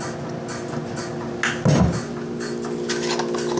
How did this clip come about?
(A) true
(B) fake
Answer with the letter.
A